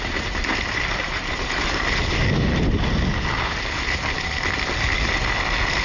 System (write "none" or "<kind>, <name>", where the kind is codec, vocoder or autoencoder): none